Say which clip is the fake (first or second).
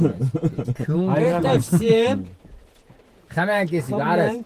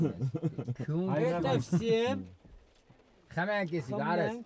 first